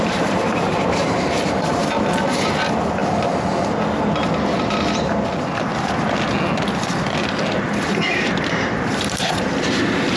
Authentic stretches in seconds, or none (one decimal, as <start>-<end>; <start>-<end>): 1.8-2.5; 3.0-7.6